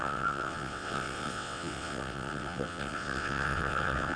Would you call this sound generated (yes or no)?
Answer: yes